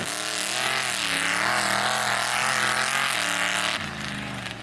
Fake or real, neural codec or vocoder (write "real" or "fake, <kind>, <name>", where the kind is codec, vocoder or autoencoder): real